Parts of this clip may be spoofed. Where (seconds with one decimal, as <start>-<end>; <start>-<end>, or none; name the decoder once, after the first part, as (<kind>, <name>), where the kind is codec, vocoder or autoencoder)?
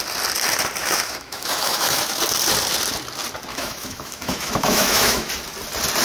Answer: 0.8-2.2 (autoencoder, DAC-VAE); 3.5-5.3